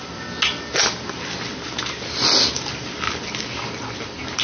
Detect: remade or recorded recorded